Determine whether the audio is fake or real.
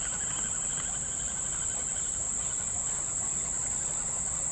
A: real